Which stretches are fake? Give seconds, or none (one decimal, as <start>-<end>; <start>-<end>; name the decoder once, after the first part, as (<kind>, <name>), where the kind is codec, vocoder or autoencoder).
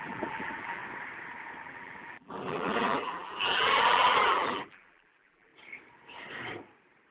0.0-0.8 (vocoder, BigVGAN v2); 1.6-5.5